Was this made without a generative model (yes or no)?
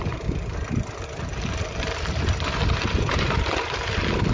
yes